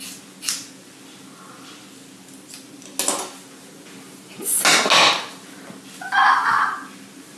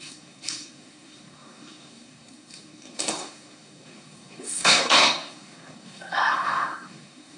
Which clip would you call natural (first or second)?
first